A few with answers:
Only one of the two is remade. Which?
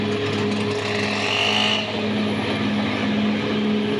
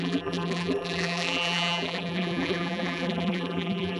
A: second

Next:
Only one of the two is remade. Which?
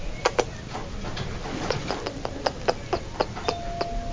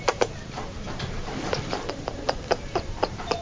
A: second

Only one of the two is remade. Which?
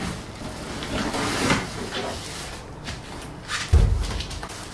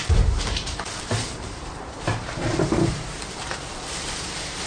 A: second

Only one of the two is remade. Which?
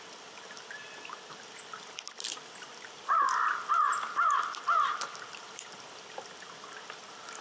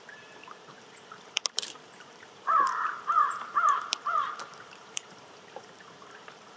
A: second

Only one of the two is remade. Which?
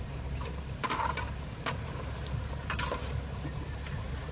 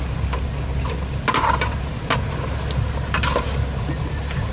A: first